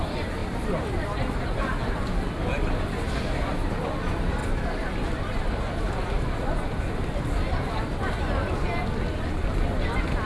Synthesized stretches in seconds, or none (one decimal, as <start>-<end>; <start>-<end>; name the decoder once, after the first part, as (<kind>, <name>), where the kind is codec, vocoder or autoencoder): 4.4-7.2 (vocoder, BigVGAN v2)